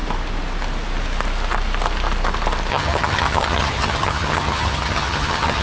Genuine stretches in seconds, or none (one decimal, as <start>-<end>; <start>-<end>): 0.0-2.7